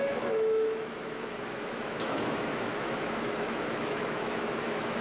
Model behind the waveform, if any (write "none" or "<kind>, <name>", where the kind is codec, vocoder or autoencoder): autoencoder, DAC-VAE